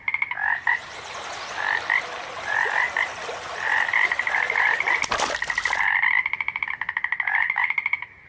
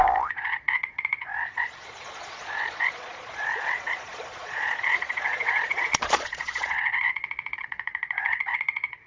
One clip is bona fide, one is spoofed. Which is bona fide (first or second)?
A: first